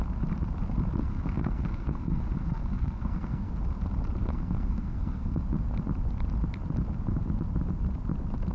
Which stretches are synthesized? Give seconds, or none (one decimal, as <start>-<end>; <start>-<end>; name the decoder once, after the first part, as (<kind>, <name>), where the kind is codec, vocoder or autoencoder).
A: 1.0-3.5 (codec, SNAC); 4.3-5.4